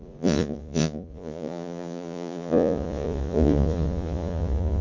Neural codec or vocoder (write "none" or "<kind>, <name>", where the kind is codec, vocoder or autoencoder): vocoder, Vocos